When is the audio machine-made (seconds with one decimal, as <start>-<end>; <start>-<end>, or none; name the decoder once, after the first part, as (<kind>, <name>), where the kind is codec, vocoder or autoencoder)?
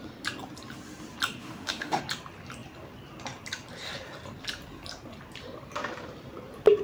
1.4-2.0 (autoencoder, DAC-VAE)